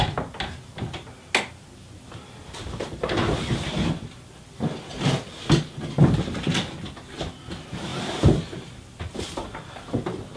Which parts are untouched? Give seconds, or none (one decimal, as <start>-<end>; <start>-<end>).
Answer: 0.0-10.4